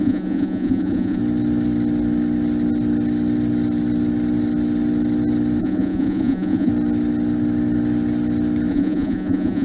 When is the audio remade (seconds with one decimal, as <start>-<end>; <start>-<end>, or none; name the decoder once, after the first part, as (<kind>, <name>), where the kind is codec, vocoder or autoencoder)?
0.0-1.2 (vocoder, Vocos); 5.6-6.7; 8.7-9.6